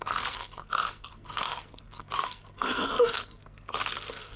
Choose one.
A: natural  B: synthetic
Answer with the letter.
B